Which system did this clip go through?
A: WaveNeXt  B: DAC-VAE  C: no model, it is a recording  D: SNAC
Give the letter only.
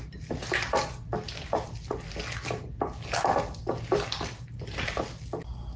C